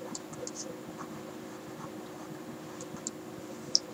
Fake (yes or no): no